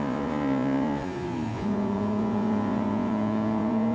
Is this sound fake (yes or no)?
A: yes